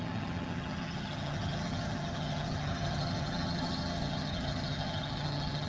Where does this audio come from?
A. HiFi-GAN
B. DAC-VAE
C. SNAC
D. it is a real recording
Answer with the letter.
A